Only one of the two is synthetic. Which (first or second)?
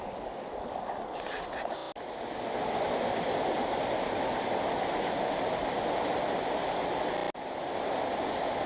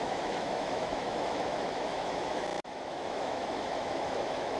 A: second